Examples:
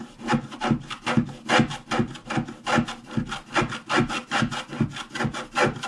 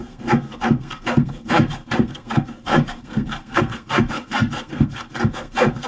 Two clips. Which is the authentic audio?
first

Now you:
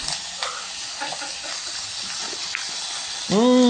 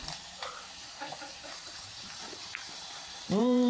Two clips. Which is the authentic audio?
first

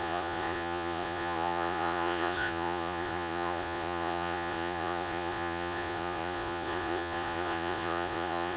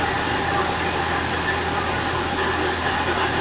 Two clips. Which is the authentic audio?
second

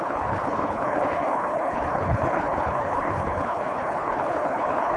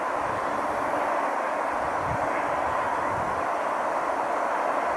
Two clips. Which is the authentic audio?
second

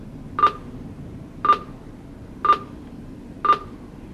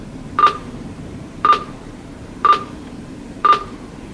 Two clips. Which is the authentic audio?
first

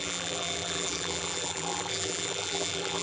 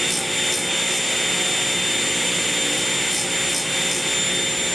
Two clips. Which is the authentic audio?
second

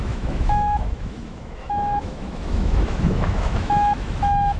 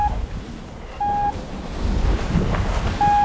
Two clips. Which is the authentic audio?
second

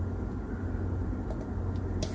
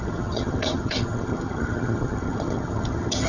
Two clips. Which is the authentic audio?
first